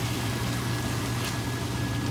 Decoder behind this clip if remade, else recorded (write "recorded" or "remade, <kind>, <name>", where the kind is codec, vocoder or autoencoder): recorded